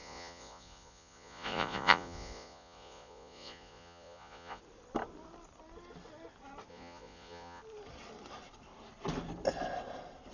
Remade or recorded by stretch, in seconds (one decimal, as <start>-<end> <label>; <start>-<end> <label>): 0.0-4.6 remade; 4.6-6.7 recorded; 6.7-7.6 remade; 7.6-10.3 recorded